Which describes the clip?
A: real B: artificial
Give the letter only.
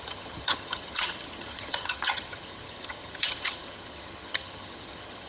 B